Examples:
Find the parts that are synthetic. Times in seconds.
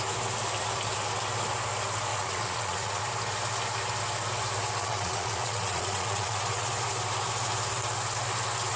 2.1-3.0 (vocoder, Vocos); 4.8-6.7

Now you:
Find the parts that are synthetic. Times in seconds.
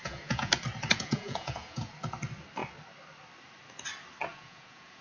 0.0-0.5 (vocoder, Vocos); 0.9-1.9; 4.3-5.0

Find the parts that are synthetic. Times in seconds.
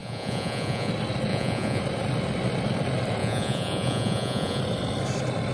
0.0-0.9 (vocoder, Vocos); 1.3-1.8; 3.2-4.6